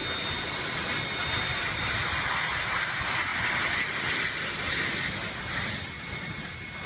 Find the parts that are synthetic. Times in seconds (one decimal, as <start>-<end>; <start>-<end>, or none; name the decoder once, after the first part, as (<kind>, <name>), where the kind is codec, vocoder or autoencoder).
none